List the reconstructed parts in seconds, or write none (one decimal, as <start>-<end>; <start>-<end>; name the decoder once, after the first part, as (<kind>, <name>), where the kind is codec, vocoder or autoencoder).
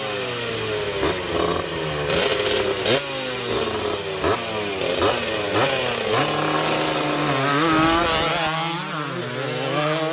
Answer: 7.5-8.0 (codec, DAC)